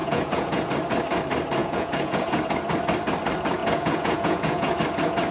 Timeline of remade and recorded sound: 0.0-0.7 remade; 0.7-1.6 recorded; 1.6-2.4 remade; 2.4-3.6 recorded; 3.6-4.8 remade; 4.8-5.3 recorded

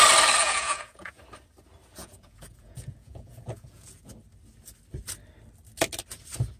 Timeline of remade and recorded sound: 0.0-0.4 recorded; 0.4-1.2 remade; 1.2-2.0 recorded; 2.0-4.1 remade; 4.1-6.6 recorded

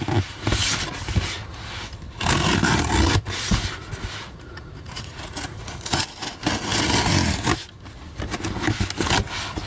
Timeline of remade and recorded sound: 0.0-4.2 recorded; 4.2-6.0 remade; 6.0-9.7 recorded

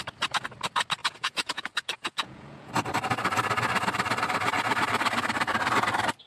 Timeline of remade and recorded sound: 0.0-1.0 recorded; 1.0-2.7 remade; 2.7-6.3 recorded

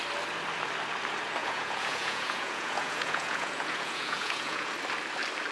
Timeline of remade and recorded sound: 0.0-1.4 recorded; 1.4-4.7 remade; 4.7-5.5 recorded

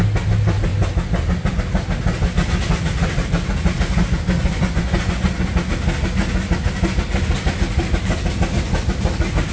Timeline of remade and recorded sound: 0.0-4.4 recorded; 4.4-5.2 remade; 5.2-9.5 recorded

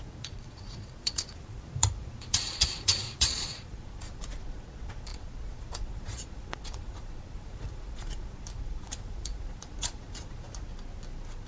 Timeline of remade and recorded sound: 0.0-10.7 remade; 10.7-11.5 recorded

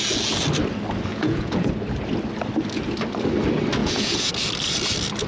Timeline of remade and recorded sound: 0.0-1.1 recorded; 1.1-1.7 remade; 1.7-3.8 recorded; 3.8-4.3 remade; 4.3-5.3 recorded